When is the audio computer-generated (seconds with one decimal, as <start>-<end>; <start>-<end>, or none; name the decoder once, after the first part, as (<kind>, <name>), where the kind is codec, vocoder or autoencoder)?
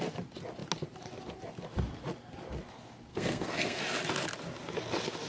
3.1-3.8 (codec, SNAC)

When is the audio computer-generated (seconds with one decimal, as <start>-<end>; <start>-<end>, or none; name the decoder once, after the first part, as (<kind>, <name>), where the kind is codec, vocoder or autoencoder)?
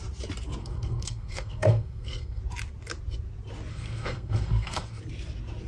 0.6-2.4 (codec, SNAC); 3.7-5.0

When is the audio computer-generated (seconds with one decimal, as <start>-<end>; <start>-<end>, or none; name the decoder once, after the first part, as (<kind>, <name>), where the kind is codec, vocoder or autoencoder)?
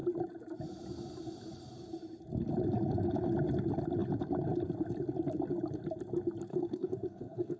6.5-7.6 (codec, SNAC)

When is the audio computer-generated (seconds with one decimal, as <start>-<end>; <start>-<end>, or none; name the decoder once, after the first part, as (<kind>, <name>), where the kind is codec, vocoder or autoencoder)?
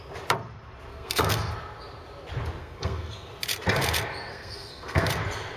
0.9-1.5 (codec, SNAC); 2.6-3.3; 4.3-5.1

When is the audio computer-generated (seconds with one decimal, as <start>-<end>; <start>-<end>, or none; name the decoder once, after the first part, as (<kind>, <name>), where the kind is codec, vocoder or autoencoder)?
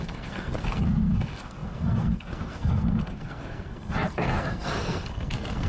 0.0-5.7 (codec, SNAC)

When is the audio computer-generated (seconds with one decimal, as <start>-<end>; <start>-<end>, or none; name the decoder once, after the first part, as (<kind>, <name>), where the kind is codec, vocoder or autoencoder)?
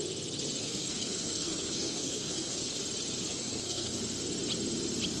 0.6-2.8 (codec, SNAC); 3.3-4.0